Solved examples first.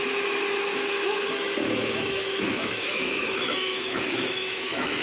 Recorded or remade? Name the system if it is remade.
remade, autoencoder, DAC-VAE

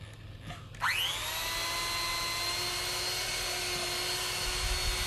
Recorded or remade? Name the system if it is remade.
recorded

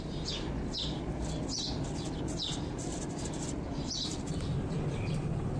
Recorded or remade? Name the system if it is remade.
recorded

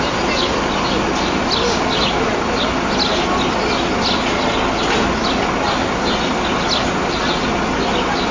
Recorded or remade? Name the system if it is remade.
recorded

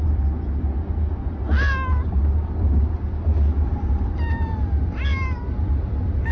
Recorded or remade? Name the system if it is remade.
recorded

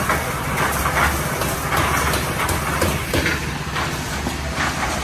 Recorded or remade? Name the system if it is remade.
recorded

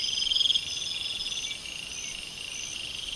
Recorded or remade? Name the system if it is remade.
recorded